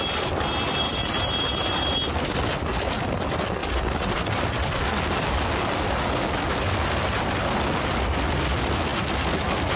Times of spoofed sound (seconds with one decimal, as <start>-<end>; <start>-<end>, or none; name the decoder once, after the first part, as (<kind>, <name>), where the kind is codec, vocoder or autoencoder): none